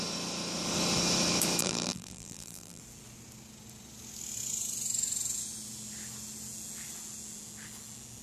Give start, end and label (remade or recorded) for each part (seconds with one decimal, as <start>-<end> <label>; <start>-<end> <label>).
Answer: 0.0-1.6 recorded; 1.6-2.8 remade; 2.8-8.2 recorded